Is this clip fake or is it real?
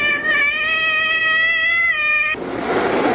real